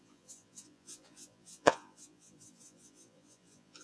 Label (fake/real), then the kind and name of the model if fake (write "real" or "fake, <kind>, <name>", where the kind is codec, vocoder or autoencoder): fake, vocoder, Vocos